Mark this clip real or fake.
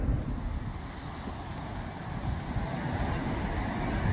real